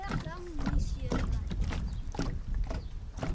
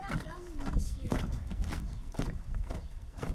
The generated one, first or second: second